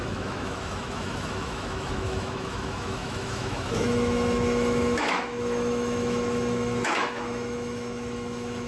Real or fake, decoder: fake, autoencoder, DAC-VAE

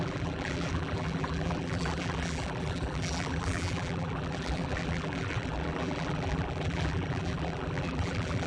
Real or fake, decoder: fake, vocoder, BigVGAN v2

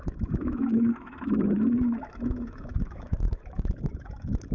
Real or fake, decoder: fake, autoencoder, DAC-VAE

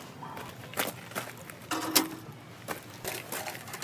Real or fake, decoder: real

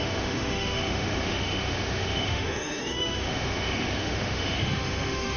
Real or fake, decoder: fake, autoencoder, DAC-VAE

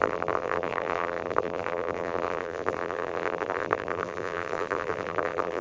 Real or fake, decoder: fake, vocoder, BigVGAN v2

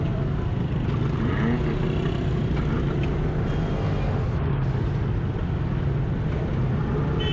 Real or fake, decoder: real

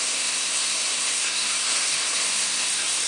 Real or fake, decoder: fake, codec, SNAC